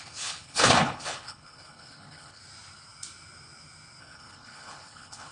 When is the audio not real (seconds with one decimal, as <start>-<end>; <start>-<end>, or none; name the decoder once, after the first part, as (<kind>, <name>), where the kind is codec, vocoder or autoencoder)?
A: 0.0-2.4 (codec, HILCodec); 4.0-5.3